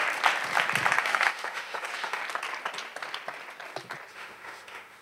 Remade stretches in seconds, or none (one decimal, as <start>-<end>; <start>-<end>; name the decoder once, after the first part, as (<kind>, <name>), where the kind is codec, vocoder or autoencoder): 1.0-2.2 (autoencoder, DAC-VAE); 4.1-5.0

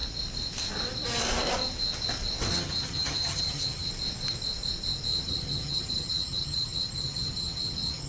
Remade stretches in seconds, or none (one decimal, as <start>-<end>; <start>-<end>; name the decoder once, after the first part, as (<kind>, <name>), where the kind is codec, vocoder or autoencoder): 2.5-3.9 (vocoder, HiFi-GAN); 5.1-8.1

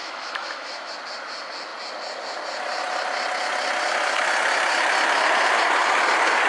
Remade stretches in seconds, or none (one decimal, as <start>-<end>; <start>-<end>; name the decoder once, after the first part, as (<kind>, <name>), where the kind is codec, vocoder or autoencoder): 0.0-0.9 (autoencoder, DAC-VAE)

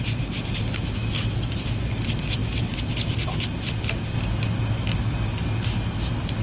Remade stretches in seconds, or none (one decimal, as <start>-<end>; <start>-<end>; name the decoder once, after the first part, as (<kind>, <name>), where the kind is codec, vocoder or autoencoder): none

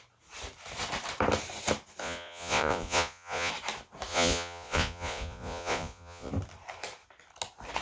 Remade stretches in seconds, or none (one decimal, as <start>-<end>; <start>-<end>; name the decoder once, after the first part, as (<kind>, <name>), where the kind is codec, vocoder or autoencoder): 2.0-3.5 (vocoder, Vocos); 4.1-6.3